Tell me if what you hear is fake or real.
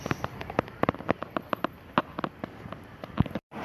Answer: real